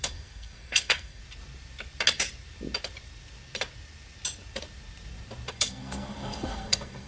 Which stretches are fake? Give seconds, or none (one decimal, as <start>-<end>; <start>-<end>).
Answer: 0.0-1.2; 5.5-7.1